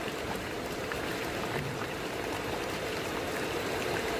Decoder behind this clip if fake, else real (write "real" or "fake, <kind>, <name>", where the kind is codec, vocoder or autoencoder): fake, vocoder, BigVGAN v2